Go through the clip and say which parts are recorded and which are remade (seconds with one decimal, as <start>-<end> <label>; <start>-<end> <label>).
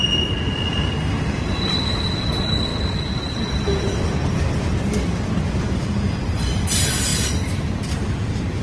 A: 0.0-2.7 recorded; 2.7-3.6 remade; 3.6-7.1 recorded; 7.1-8.1 remade; 8.1-8.6 recorded